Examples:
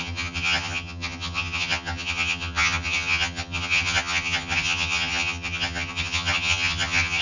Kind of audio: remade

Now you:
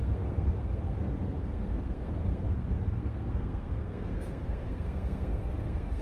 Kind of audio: remade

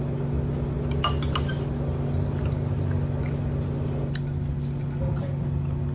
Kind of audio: recorded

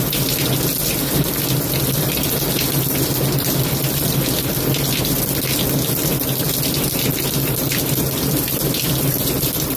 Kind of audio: recorded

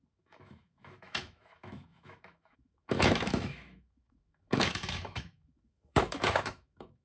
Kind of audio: remade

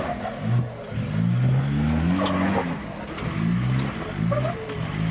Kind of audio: recorded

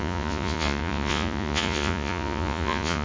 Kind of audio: remade